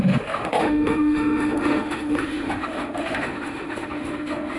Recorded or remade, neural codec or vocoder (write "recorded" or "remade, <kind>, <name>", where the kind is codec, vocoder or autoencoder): remade, autoencoder, DAC-VAE